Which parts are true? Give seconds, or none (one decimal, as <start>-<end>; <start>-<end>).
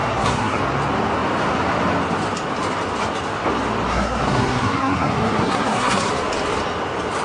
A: 0.6-3.9; 6.1-7.2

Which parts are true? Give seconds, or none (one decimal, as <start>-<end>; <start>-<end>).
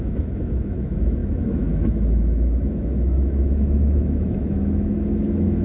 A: none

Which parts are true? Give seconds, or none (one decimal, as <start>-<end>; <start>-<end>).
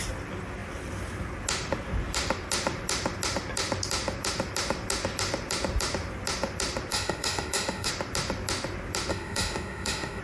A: 0.0-6.9; 7.9-9.1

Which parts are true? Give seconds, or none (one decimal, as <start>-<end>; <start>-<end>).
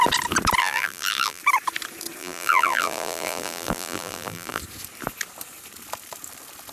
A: 0.0-0.6; 1.4-2.2; 4.6-6.7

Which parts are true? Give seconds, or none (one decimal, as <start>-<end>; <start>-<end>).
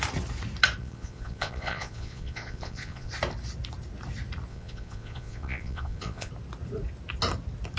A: 0.0-0.8; 3.1-4.5; 6.3-7.8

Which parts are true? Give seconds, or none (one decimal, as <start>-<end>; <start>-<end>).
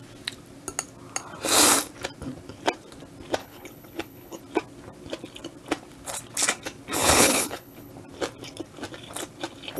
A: 0.0-3.4; 4.4-7.0; 7.9-9.8